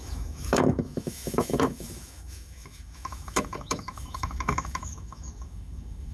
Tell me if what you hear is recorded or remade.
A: remade